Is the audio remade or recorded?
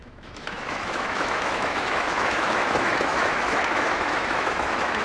remade